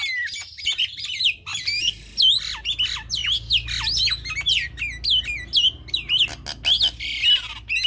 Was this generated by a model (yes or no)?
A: no